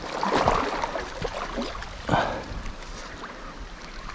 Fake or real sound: real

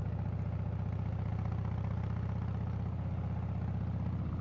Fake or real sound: real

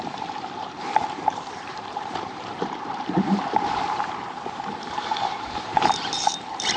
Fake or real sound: fake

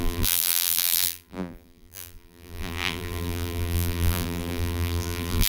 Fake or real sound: fake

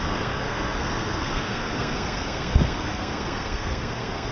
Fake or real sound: fake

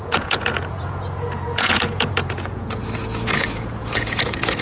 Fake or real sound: fake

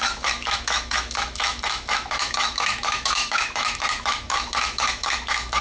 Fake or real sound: fake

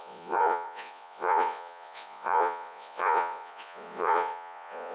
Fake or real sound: fake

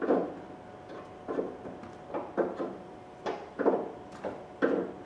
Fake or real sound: real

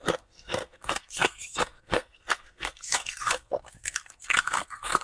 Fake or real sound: fake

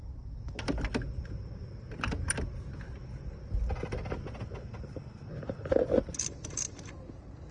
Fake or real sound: real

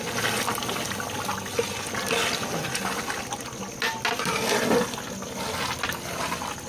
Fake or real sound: real